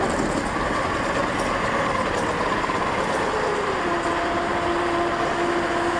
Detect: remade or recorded recorded